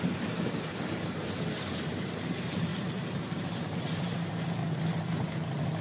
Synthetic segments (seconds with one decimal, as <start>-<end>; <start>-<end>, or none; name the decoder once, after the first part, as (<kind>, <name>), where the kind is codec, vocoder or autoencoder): 0.0-4.6 (vocoder, BigVGAN v2); 5.1-5.8